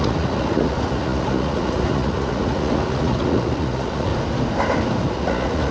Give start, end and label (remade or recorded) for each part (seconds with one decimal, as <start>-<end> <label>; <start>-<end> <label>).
0.0-4.1 remade; 4.1-5.1 recorded; 5.1-5.7 remade